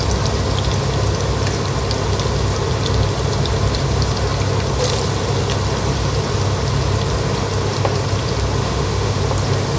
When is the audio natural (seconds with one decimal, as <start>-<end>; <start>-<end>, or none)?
0.0-8.6; 9.2-9.8

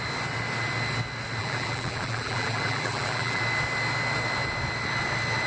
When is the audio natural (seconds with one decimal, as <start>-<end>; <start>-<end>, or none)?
0.0-1.4; 3.4-5.5

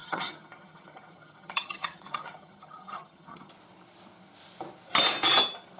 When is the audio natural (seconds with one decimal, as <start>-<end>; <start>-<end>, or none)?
3.5-5.8